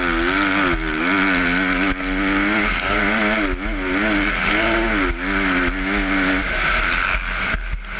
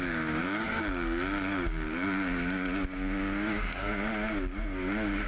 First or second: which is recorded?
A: first